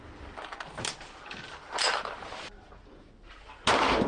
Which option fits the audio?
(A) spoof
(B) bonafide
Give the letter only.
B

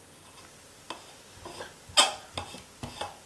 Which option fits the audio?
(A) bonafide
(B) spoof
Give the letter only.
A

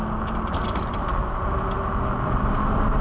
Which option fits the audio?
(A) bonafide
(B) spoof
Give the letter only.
A